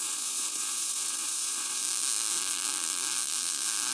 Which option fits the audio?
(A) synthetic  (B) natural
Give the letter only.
B